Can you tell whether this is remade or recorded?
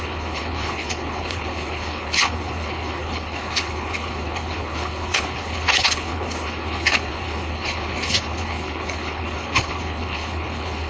remade